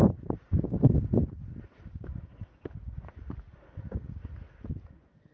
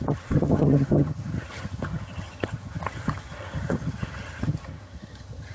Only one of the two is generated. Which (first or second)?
second